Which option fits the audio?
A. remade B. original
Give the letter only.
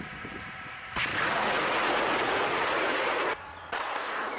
A